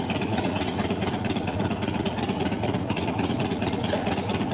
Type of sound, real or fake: fake